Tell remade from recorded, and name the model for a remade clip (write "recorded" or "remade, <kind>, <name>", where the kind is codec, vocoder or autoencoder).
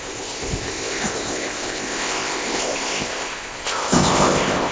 remade, codec, ZipCodec